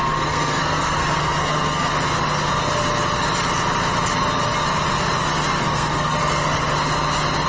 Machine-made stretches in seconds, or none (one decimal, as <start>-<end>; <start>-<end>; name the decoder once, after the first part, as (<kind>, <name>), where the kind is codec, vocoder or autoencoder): 0.0-1.9 (codec, SNAC); 5.5-6.2